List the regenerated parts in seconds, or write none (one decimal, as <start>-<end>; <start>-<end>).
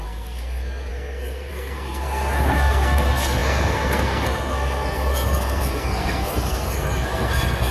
0.0-7.7